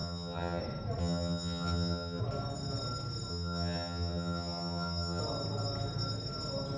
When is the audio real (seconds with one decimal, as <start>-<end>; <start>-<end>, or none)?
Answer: 0.6-1.0; 2.2-3.3; 5.2-6.8